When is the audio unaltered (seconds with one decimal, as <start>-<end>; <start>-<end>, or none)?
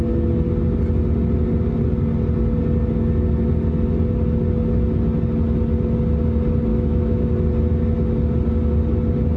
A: 0.0-6.7; 7.3-9.4